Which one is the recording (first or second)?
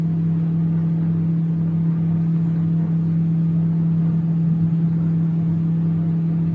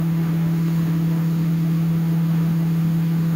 first